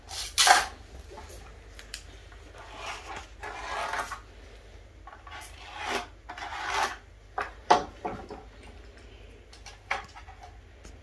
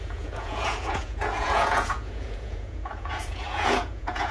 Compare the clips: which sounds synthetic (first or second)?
second